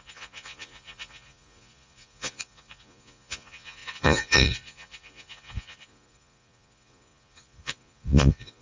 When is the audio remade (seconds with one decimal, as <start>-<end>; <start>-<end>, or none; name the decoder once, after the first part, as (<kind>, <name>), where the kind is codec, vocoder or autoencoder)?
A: 0.0-8.6 (vocoder, Vocos)